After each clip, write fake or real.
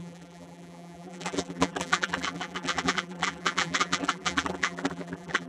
fake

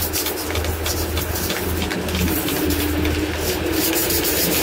real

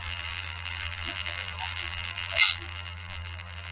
fake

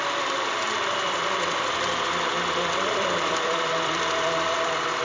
fake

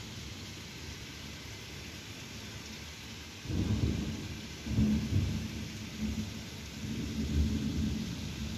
real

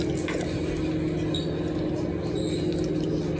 real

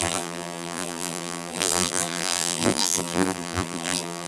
fake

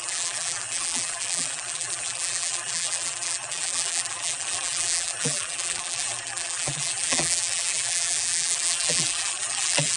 fake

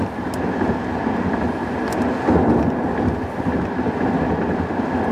real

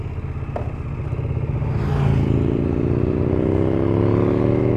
real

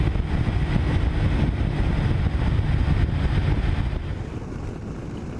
real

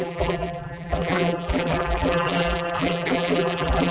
fake